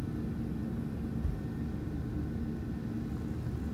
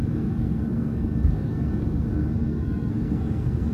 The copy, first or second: second